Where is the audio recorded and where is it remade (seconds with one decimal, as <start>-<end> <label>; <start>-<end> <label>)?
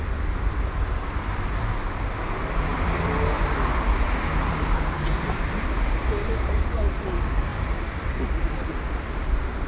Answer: 0.0-9.7 remade